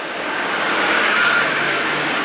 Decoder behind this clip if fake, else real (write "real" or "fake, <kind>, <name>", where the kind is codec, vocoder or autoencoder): fake, codec, DAC